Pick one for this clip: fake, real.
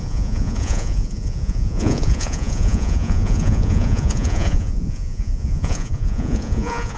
fake